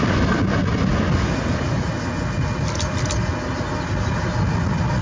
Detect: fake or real real